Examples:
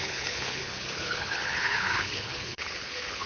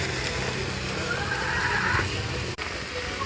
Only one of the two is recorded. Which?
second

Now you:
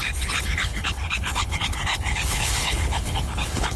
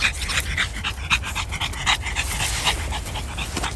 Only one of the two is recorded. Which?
second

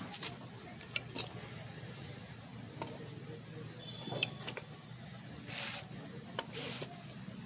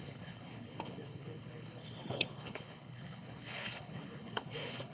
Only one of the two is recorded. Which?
first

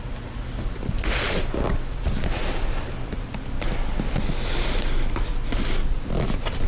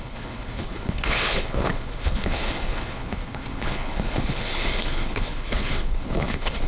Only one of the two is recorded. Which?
first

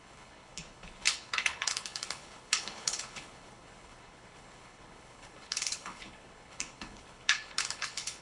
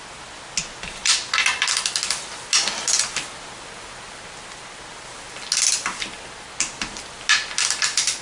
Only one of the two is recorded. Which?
second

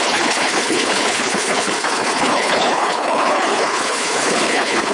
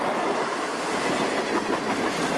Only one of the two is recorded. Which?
second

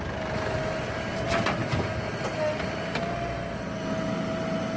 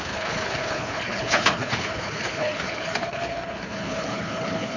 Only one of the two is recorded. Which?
first